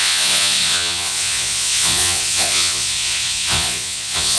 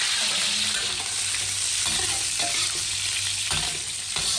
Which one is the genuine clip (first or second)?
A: second